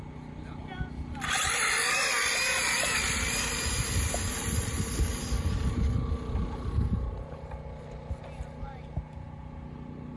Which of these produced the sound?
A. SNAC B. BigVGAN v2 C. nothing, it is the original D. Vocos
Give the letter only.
C